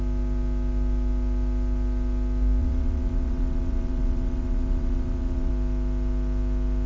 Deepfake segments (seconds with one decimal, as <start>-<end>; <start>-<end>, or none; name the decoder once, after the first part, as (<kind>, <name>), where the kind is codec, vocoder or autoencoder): 2.6-5.5 (vocoder, WaveNeXt)